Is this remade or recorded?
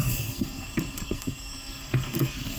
remade